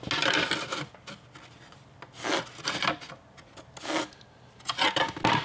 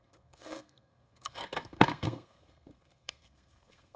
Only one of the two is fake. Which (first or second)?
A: second